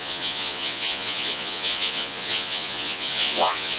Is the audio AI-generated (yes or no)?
yes